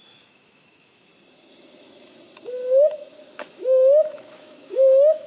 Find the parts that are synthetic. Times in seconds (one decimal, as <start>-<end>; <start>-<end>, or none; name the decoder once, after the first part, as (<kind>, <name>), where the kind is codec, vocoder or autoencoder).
0.0-1.1 (autoencoder, DAC-VAE); 3.5-5.3